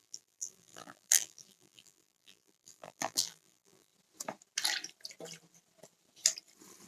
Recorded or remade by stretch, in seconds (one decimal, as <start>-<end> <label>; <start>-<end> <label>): 0.0-3.9 remade; 3.9-6.9 recorded